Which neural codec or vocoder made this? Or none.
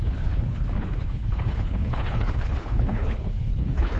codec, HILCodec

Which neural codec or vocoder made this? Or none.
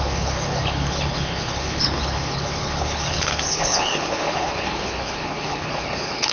codec, HILCodec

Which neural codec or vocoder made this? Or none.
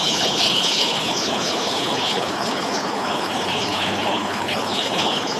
codec, HILCodec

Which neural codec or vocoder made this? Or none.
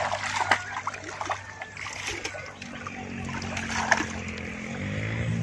none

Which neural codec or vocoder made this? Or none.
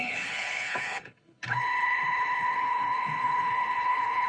codec, HILCodec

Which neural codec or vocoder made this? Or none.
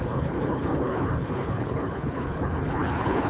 codec, HILCodec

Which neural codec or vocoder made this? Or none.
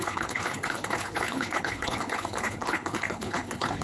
codec, HILCodec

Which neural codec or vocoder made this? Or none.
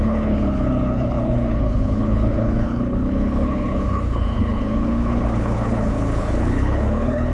codec, HILCodec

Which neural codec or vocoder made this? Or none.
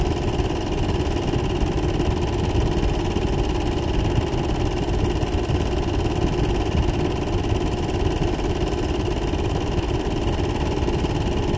none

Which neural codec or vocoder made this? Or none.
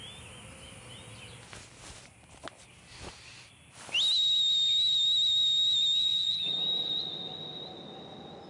none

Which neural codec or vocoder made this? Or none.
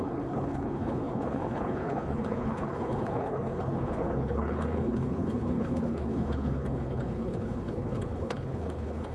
codec, HILCodec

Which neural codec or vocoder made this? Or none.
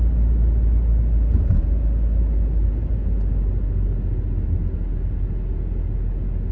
none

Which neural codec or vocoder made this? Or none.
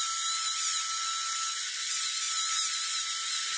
none